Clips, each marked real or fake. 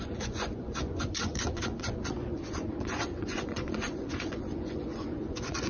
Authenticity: fake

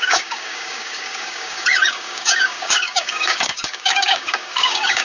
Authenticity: fake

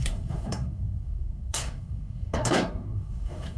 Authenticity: fake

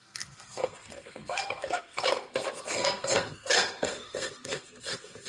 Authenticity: fake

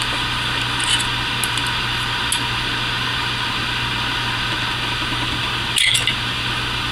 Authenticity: real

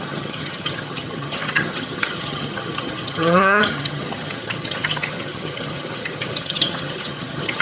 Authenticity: fake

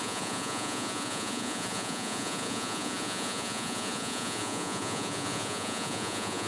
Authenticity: fake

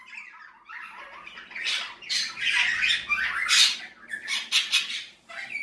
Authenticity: real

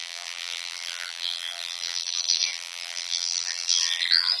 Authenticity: fake